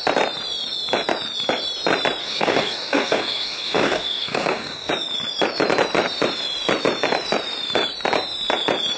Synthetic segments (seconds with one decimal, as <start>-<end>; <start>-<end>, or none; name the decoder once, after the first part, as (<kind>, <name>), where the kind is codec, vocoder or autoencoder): 2.2-4.9 (codec, DAC)